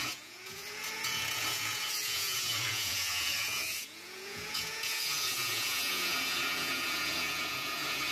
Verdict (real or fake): fake